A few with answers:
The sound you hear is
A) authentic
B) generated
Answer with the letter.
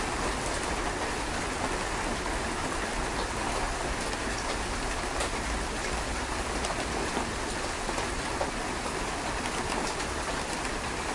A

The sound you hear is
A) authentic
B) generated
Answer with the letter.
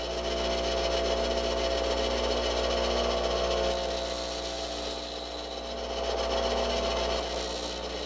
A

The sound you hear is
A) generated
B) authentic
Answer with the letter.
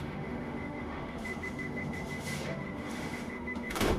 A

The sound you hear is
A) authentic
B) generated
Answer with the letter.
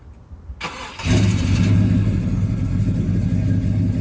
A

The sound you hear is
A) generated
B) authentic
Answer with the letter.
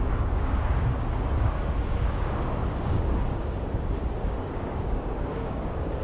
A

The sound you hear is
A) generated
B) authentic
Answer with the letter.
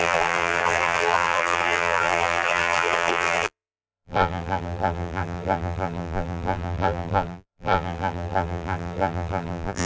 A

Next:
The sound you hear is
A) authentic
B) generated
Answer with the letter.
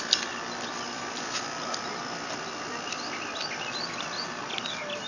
A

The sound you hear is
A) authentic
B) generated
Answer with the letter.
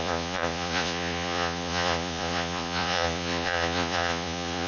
B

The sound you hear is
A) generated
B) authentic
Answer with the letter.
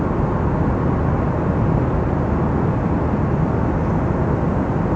B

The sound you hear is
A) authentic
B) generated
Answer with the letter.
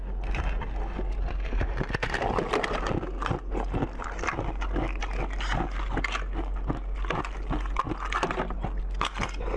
A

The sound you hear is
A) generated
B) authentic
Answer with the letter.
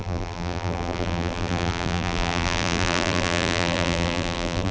A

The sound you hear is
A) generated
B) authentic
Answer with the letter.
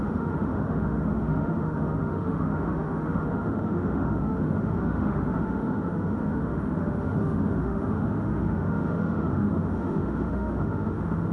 A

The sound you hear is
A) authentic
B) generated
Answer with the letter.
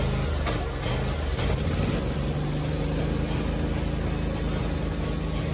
A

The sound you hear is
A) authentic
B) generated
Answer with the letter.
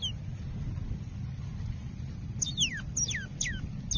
A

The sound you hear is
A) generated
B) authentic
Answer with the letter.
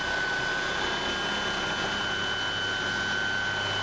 B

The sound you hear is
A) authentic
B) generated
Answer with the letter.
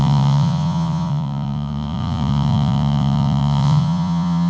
B